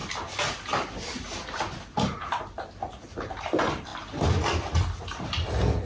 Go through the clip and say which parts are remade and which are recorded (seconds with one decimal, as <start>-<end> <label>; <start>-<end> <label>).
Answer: 0.0-3.4 recorded; 3.4-3.9 remade; 3.9-5.0 recorded; 5.0-5.9 remade